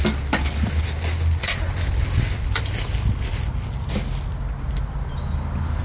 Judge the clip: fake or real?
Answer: real